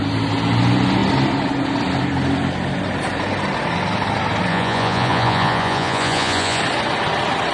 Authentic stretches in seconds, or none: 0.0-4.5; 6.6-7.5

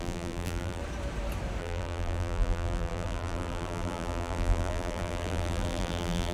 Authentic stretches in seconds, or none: 0.8-1.6

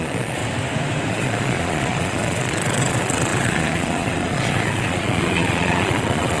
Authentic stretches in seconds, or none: 0.4-1.1

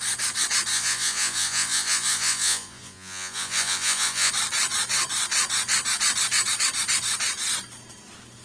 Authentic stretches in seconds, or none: 0.0-0.7; 4.3-8.4

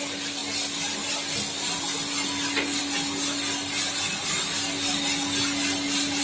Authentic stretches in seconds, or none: 0.0-6.2

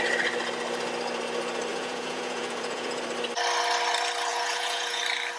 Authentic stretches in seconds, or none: 0.0-1.7; 3.0-4.3; 5.0-5.4

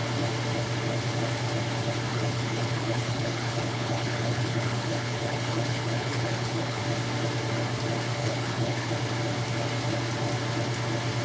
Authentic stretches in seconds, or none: 0.0-2.1; 6.8-8.2; 8.9-11.2